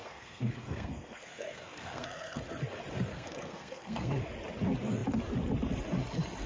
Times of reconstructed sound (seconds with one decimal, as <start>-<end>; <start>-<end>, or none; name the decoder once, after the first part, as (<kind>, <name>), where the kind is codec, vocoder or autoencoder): 0.0-2.4 (codec, SNAC); 3.1-4.3